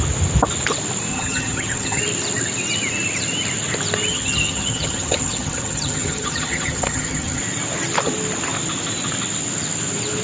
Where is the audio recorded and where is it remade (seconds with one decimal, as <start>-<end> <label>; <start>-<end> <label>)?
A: 0.0-1.1 recorded; 1.1-2.0 remade; 2.0-4.1 recorded; 4.1-7.4 remade; 7.4-10.2 recorded

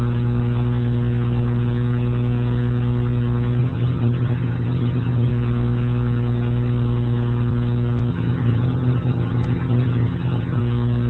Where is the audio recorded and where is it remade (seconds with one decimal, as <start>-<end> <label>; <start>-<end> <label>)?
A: 0.0-3.6 recorded; 3.6-5.3 remade; 5.3-8.1 recorded; 8.1-10.6 remade; 10.6-11.1 recorded

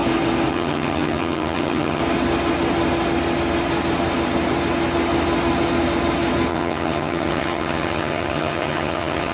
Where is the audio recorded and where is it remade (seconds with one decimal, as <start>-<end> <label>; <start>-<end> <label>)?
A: 0.0-0.5 recorded; 0.5-2.0 remade; 2.0-6.5 recorded; 6.5-9.3 remade

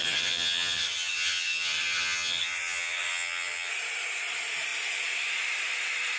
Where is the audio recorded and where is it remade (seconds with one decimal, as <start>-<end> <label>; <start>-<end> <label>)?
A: 0.0-3.7 remade; 3.7-6.2 recorded

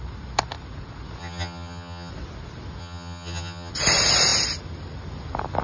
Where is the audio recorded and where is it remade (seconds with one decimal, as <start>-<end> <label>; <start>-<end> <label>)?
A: 0.0-1.2 recorded; 1.2-2.1 remade; 2.1-2.8 recorded; 2.8-3.7 remade; 3.7-5.6 recorded

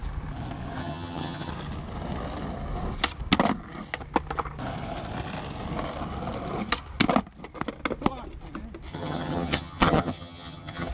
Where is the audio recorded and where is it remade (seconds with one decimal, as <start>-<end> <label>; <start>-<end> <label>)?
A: 0.0-0.8 recorded; 0.8-1.5 remade; 1.5-8.9 recorded; 8.9-10.9 remade

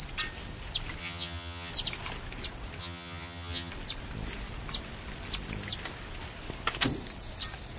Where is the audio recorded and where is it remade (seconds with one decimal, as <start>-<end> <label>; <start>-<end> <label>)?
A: 0.0-1.0 recorded; 1.0-1.7 remade; 1.7-2.8 recorded; 2.8-3.7 remade; 3.7-7.8 recorded